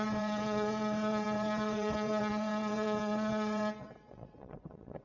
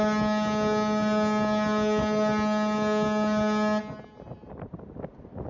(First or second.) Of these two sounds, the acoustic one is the second